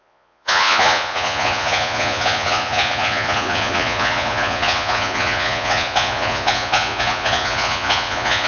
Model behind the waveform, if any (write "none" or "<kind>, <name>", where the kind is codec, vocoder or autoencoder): vocoder, Vocos